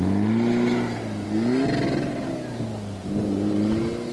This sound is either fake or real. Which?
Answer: real